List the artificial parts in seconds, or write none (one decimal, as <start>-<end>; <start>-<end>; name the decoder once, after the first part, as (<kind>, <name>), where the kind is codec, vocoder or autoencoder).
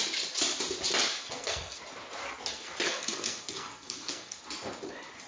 1.1-1.8 (codec, SNAC); 2.5-4.4